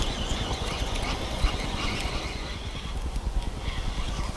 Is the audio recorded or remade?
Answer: remade